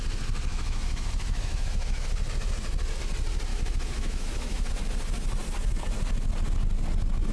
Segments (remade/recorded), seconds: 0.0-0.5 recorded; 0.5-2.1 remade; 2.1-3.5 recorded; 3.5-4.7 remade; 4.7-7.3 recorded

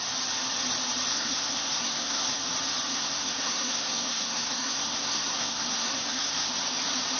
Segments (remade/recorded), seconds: 0.0-1.1 recorded; 1.1-2.3 remade; 2.3-2.9 recorded; 2.9-6.5 remade; 6.5-7.2 recorded

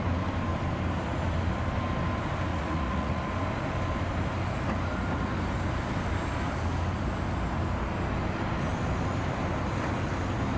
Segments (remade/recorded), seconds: 0.0-2.5 recorded; 2.5-3.2 remade; 3.2-10.6 recorded

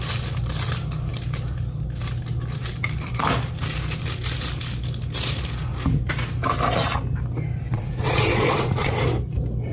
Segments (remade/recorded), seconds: 0.0-7.7 recorded; 7.7-8.9 remade; 8.9-9.7 recorded